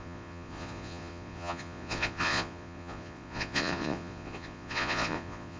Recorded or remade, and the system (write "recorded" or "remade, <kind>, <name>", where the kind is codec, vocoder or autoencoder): remade, vocoder, Vocos